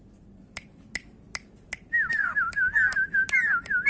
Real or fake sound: real